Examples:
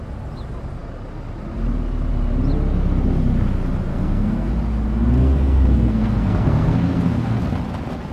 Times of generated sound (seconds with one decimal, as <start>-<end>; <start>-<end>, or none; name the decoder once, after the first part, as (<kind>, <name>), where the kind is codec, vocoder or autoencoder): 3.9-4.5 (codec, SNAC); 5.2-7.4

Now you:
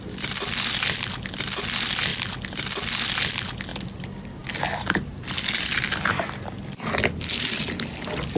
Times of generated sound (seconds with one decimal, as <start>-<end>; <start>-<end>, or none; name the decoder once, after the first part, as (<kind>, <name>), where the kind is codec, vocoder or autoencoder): none

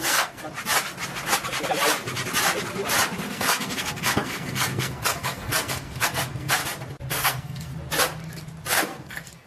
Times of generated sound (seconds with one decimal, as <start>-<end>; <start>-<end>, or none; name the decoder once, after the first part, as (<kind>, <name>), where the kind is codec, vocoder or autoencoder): 0.0-0.4 (codec, SNAC); 3.3-6.6; 7.1-7.7; 8.7-9.5

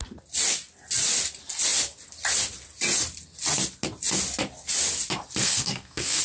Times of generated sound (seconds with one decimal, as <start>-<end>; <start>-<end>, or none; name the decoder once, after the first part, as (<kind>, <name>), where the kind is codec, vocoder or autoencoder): 5.4-6.2 (codec, SNAC)

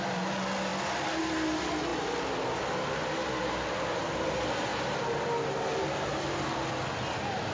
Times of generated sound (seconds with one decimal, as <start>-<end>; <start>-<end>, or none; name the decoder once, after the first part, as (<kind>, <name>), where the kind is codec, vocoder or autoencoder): none

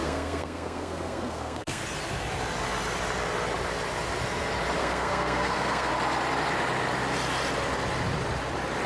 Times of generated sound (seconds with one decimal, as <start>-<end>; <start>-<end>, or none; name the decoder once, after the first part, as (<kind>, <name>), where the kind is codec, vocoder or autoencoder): 0.0-1.8 (codec, SNAC); 4.8-5.9

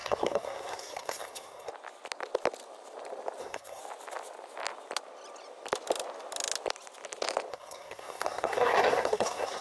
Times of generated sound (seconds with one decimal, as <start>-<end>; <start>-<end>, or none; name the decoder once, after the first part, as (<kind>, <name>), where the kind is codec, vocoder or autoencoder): 0.0-1.7 (codec, SNAC); 3.4-3.8; 7.5-9.6